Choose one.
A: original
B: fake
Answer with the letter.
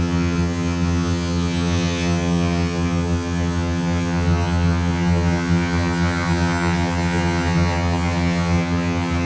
B